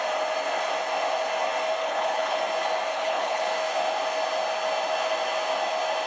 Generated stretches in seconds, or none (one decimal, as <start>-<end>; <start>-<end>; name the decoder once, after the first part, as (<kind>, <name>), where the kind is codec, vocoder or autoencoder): 1.8-2.4 (codec, HILCodec); 2.9-3.4